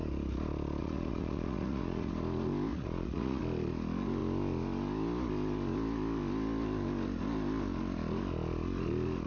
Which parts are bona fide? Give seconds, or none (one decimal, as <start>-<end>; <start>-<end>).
0.0-0.8; 2.1-2.7; 3.4-9.3